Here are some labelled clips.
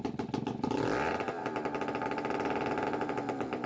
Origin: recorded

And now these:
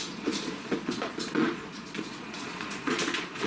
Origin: remade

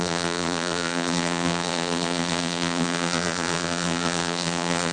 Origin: remade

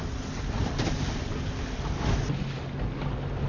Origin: recorded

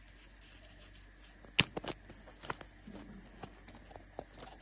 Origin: recorded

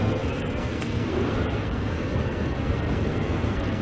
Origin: remade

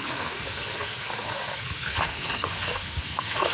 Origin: remade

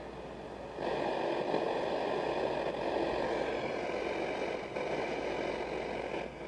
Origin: recorded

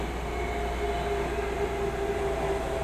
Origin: recorded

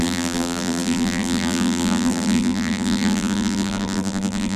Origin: remade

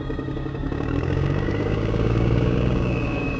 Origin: remade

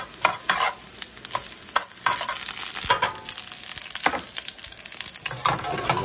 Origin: recorded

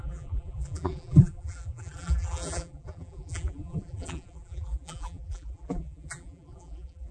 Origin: remade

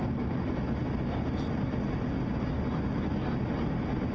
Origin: recorded